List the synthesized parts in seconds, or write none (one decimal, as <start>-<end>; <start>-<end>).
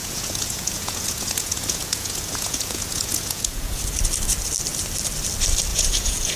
0.0-3.8; 5.7-6.4